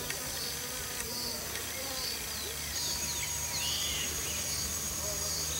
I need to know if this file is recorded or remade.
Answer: recorded